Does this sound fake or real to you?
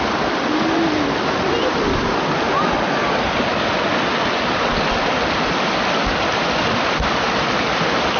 real